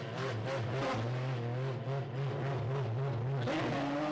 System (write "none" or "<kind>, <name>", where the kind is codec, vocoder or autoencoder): none